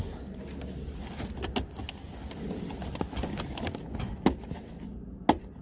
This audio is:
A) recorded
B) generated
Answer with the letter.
A